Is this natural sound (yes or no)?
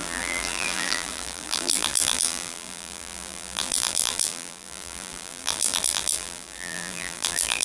no